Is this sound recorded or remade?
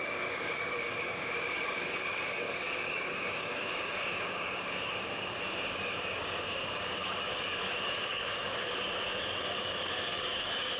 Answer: remade